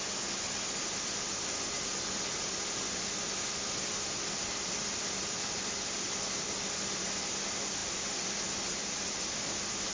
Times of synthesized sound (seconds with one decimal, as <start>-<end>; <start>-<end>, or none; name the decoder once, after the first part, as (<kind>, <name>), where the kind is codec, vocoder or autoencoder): 1.8-9.9 (vocoder, BigVGAN v2)